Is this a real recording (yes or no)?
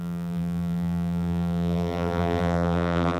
no